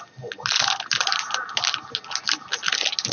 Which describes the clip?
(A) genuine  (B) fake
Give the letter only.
A